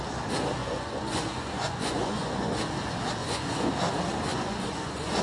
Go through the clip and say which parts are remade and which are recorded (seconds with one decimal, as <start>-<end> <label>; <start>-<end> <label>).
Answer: 0.0-0.6 recorded; 0.6-2.6 remade; 2.6-3.2 recorded; 3.2-3.7 remade; 3.7-4.3 recorded; 4.3-5.2 remade